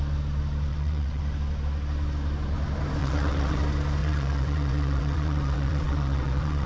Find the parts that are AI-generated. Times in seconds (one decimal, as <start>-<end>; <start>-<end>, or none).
0.7-1.2; 3.0-3.6; 4.0-6.7